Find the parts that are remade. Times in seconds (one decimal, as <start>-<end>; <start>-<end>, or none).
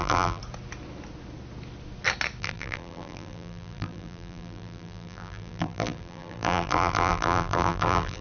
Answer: 0.0-0.4; 2.4-8.2